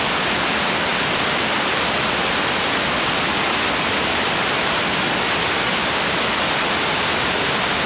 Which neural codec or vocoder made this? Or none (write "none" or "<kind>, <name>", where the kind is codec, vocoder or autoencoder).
none